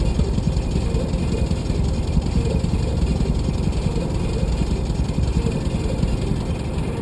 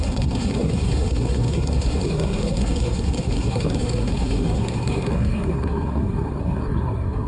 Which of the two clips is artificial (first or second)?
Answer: second